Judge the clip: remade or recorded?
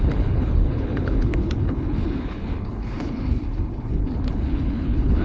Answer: remade